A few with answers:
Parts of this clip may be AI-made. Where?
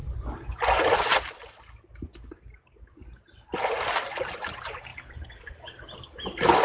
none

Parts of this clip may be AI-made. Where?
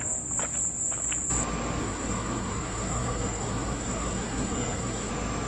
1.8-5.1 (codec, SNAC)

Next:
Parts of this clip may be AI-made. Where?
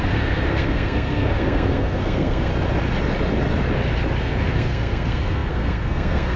0.0-2.5 (codec, SNAC); 4.2-6.4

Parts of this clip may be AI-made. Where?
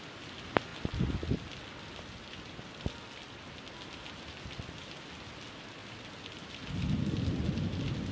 none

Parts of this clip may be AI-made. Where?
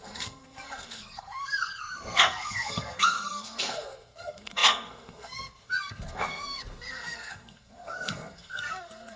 0.0-9.2 (codec, SNAC)